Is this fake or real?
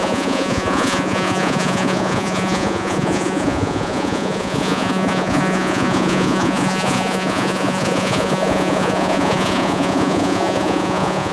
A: fake